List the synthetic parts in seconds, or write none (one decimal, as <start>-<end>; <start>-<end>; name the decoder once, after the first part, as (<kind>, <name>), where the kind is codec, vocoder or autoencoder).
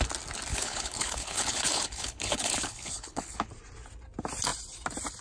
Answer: 0.5-3.5 (codec, HILCodec)